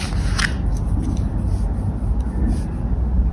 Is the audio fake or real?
real